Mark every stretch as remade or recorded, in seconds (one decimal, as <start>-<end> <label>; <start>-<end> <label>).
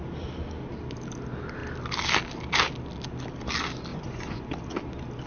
0.0-3.9 recorded; 3.9-4.5 remade; 4.5-5.3 recorded